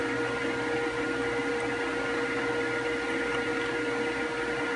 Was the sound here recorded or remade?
recorded